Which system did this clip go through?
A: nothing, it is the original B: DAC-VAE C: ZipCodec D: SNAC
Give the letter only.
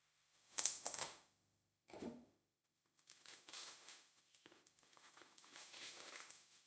B